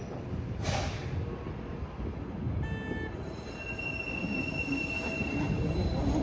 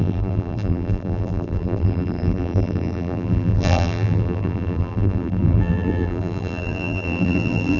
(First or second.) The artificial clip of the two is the second